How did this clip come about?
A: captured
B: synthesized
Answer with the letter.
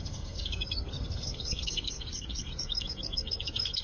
B